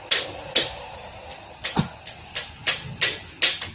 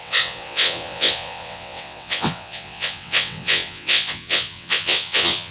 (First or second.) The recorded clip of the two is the first